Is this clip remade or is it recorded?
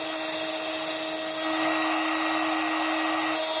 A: recorded